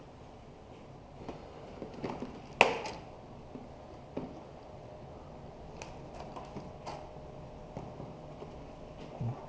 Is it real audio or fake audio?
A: real